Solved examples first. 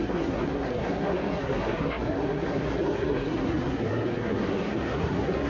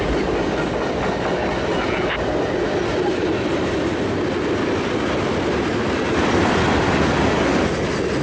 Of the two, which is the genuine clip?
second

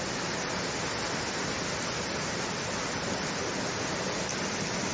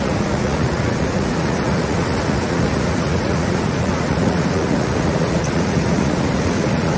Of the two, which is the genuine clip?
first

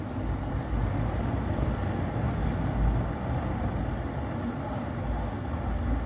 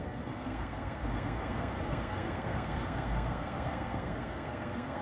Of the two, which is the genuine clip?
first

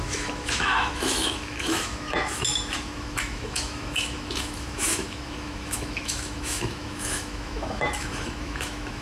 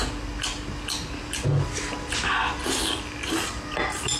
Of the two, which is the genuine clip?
second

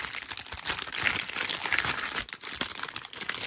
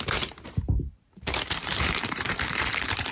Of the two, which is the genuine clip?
first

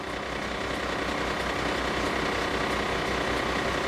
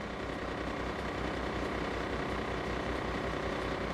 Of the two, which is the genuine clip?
first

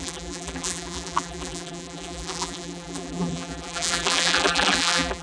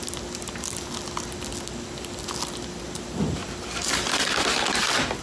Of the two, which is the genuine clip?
second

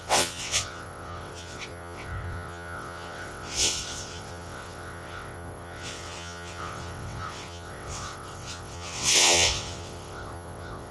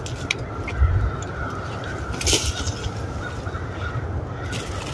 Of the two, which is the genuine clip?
second